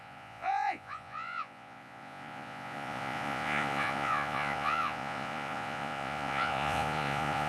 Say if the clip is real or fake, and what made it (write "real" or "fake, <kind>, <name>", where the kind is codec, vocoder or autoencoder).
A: fake, vocoder, Vocos